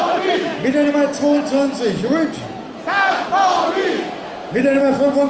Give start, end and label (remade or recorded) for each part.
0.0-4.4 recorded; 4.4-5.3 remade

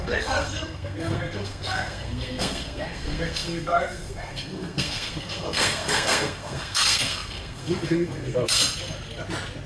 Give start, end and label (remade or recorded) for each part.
0.0-8.6 remade; 8.6-9.7 recorded

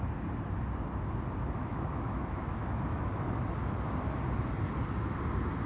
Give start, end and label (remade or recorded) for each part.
0.0-1.6 recorded; 1.6-3.1 remade; 3.1-5.7 recorded

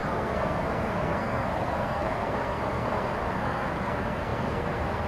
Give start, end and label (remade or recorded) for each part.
0.0-5.1 remade

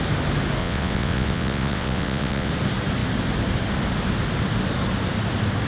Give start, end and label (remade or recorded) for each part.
0.0-0.6 recorded; 0.6-2.5 remade; 2.5-5.7 recorded